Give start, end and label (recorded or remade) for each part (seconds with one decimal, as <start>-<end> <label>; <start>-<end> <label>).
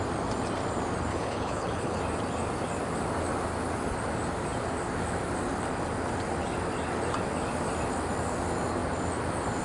0.0-1.1 recorded; 1.1-2.0 remade; 2.0-9.6 recorded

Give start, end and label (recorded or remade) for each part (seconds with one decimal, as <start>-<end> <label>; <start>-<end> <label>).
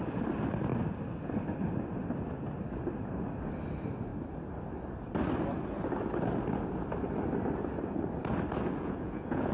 0.0-8.7 recorded; 8.7-9.5 remade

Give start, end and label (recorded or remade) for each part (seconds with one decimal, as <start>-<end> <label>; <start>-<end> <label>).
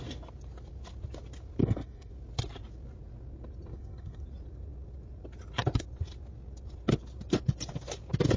0.0-1.6 recorded; 1.6-2.1 remade; 2.1-3.7 recorded; 3.7-4.2 remade; 4.2-8.4 recorded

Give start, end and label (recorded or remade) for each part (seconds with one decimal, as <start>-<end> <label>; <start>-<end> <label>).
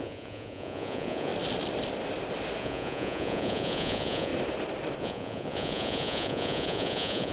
0.0-1.3 remade; 1.3-2.6 recorded; 2.6-4.3 remade; 4.3-5.0 recorded; 5.0-7.3 remade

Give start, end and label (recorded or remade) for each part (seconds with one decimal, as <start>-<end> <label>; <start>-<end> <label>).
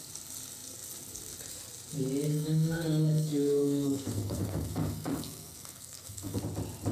0.0-2.3 recorded; 2.3-6.4 remade; 6.4-6.9 recorded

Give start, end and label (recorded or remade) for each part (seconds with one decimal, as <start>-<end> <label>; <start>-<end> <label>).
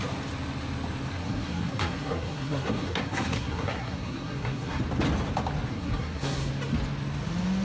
0.0-1.2 recorded; 1.2-4.8 remade; 4.8-5.7 recorded; 5.7-6.5 remade; 6.5-7.6 recorded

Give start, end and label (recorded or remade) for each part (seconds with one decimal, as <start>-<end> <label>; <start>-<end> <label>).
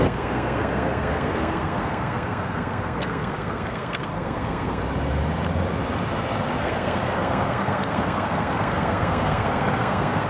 0.0-4.8 remade; 4.8-6.6 recorded; 6.6-10.3 remade